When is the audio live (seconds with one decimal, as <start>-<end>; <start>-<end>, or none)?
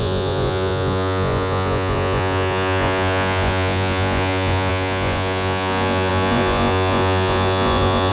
none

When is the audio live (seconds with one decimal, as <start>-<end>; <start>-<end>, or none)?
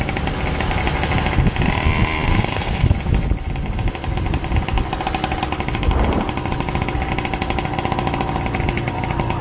0.0-2.3; 2.9-9.4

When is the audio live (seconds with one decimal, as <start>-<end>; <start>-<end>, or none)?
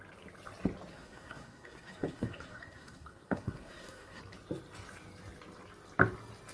0.0-0.9; 4.2-6.5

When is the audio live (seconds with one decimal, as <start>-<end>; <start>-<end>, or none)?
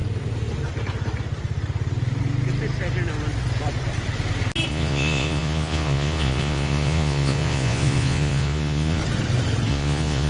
0.0-4.7; 9.0-9.7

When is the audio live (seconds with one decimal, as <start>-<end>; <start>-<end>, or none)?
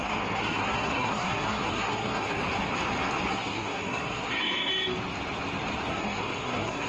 2.4-3.3; 4.7-5.9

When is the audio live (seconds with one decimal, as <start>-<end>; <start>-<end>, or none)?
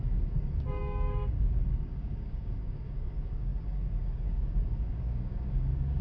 none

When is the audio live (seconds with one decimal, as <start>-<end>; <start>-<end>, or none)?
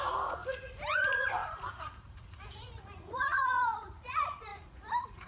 0.4-0.9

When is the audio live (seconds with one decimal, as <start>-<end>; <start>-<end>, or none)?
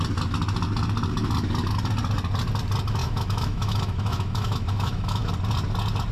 0.0-3.0; 5.3-6.1